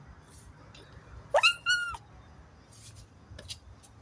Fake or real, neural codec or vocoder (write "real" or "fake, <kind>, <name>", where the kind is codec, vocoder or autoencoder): real